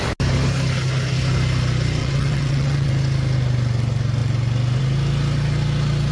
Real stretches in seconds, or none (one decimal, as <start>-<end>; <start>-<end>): 0.0-2.0; 2.9-6.1